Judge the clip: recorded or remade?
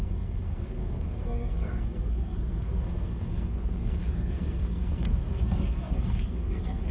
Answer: remade